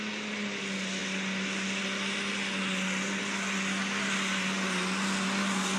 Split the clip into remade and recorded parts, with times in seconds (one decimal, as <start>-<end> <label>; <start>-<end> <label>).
0.0-5.8 recorded